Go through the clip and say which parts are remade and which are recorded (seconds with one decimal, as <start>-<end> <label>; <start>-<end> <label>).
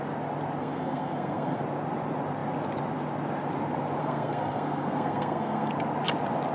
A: 0.0-0.6 recorded; 0.6-1.6 remade; 1.6-4.0 recorded; 4.0-5.7 remade; 5.7-6.5 recorded